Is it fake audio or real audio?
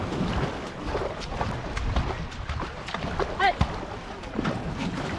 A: real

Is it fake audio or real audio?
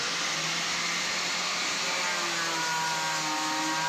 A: real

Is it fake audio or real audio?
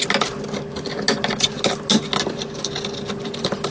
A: real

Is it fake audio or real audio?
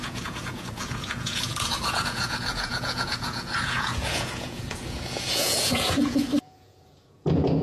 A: fake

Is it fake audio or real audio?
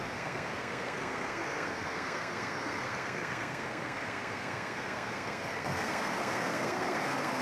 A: fake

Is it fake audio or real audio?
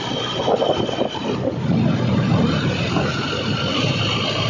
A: real